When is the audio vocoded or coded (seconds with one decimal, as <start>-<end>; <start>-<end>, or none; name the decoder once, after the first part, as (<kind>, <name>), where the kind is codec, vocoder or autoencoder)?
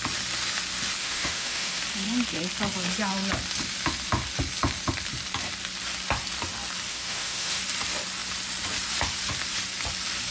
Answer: 1.0-1.8 (autoencoder, DAC-VAE); 6.9-7.6